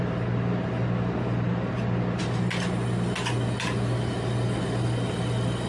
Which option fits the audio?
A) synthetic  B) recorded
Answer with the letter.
B